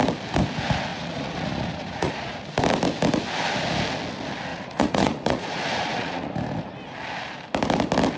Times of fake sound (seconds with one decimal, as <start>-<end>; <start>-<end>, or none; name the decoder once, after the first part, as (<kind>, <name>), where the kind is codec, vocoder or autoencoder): 0.9-2.4 (vocoder, Vocos); 4.5-6.3